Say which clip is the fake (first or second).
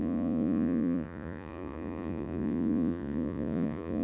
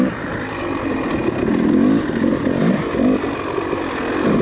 first